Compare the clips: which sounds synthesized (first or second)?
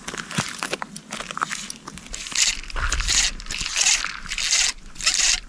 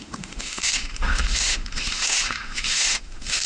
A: second